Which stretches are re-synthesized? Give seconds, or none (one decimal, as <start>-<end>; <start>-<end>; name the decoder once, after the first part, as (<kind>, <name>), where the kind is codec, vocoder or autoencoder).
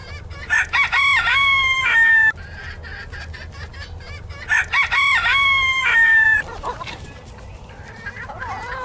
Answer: 5.8-8.4 (vocoder, BigVGAN v2)